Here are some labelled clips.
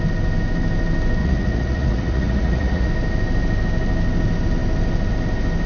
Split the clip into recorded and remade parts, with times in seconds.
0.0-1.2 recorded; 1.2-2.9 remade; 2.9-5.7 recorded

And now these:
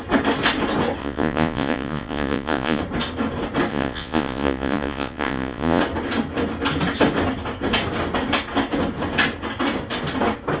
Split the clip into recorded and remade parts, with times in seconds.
0.0-1.0 recorded; 1.0-2.8 remade; 2.8-3.7 recorded; 3.7-5.8 remade; 5.8-10.6 recorded